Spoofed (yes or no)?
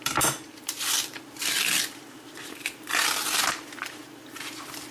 yes